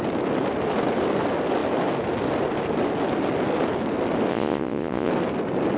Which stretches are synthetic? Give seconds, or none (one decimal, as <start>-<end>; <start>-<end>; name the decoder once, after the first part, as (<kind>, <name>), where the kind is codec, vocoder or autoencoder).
4.3-5.1 (vocoder, Vocos)